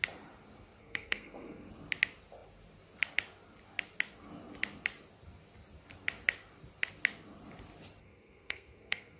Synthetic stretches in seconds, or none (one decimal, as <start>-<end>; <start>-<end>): 0.8-1.7; 8.0-9.2